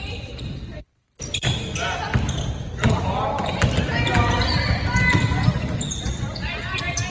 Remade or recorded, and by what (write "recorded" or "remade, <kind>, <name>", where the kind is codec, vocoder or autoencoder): recorded